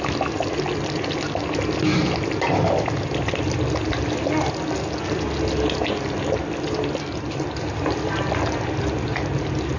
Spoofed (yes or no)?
no